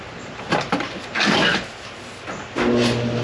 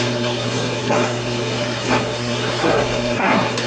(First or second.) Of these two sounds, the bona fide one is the first